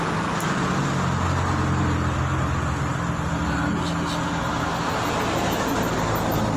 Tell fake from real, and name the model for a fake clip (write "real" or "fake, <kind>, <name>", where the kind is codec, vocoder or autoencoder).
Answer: real